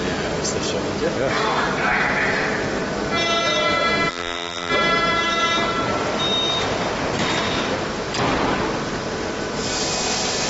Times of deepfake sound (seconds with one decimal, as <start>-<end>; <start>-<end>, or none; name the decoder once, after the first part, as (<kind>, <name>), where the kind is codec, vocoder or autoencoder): 4.1-4.7 (vocoder, BigVGAN v2)

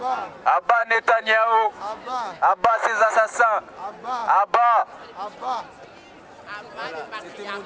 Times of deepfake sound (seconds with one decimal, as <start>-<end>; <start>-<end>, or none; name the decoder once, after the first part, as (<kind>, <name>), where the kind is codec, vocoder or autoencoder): 0.8-3.1 (autoencoder, DAC-VAE)

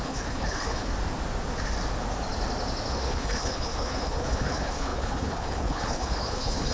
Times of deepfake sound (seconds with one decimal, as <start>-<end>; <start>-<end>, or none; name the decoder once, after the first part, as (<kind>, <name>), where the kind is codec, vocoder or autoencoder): 0.0-0.9 (codec, HILCodec); 2.9-6.7

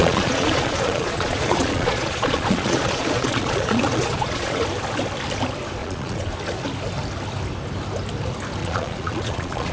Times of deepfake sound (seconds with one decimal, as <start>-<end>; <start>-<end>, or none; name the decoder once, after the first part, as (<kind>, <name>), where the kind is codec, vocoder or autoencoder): 0.0-4.6 (vocoder, Vocos); 5.8-6.3; 8.6-9.7